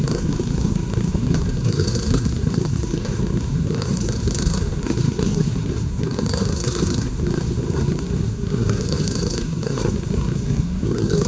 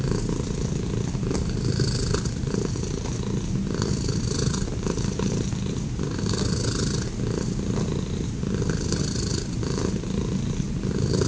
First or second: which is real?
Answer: second